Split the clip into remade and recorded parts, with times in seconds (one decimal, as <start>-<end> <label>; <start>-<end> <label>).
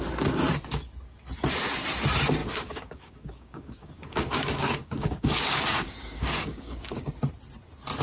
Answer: 0.0-2.4 recorded; 2.4-7.1 remade; 7.1-8.0 recorded